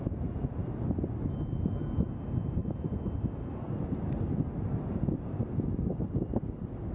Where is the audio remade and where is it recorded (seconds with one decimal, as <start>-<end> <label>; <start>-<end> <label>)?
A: 0.0-6.9 recorded

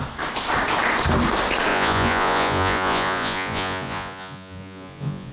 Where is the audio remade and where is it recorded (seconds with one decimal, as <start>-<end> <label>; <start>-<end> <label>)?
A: 0.0-1.7 recorded; 1.7-5.3 remade

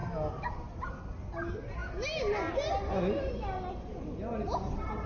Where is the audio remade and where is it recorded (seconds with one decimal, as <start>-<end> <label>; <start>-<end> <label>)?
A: 0.0-5.1 recorded

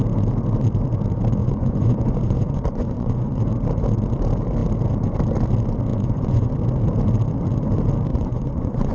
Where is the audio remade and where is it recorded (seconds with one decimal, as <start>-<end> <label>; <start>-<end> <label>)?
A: 0.0-1.4 recorded; 1.4-3.4 remade; 3.4-5.9 recorded; 5.9-6.5 remade; 6.5-8.1 recorded; 8.1-8.9 remade

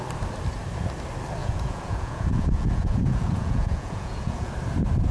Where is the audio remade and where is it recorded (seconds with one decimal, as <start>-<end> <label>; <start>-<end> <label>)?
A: 0.0-1.4 recorded; 1.4-4.5 remade; 4.5-5.1 recorded

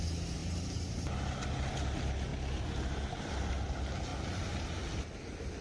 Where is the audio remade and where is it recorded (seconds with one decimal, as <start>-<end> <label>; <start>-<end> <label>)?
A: 0.0-5.6 recorded

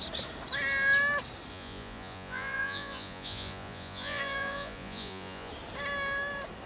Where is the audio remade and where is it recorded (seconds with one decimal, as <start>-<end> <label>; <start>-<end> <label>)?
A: 0.0-1.5 recorded; 1.5-5.5 remade; 5.5-6.7 recorded

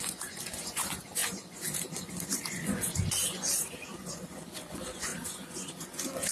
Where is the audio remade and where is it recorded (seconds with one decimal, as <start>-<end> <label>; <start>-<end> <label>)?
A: 0.0-6.3 remade